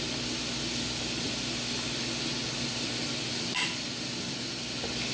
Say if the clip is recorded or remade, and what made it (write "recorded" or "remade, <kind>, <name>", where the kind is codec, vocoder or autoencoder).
recorded